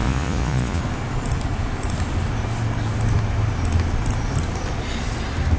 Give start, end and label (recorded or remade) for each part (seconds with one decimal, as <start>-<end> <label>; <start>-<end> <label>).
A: 0.0-0.8 remade; 0.8-5.6 recorded